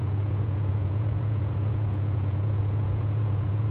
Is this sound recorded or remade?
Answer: remade